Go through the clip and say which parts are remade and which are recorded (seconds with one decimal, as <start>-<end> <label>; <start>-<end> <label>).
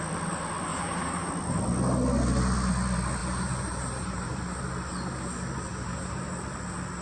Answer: 0.0-0.7 recorded; 0.7-1.3 remade; 1.3-3.2 recorded; 3.2-4.4 remade; 4.4-5.7 recorded; 5.7-6.2 remade; 6.2-7.0 recorded